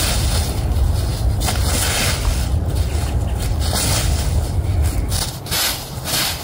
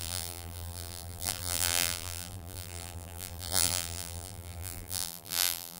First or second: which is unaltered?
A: first